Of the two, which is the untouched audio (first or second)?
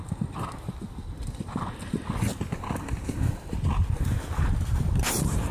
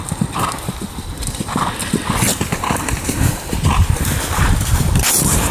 first